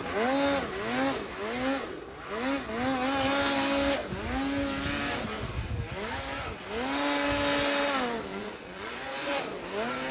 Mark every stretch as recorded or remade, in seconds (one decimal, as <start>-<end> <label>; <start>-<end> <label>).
0.0-8.3 recorded; 8.3-9.6 remade; 9.6-10.1 recorded